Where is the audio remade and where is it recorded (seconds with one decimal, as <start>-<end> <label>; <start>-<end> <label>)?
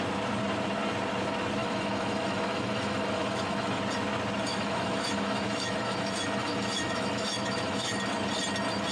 0.0-1.6 recorded; 1.6-3.8 remade; 3.8-4.5 recorded; 4.5-8.0 remade; 8.0-8.9 recorded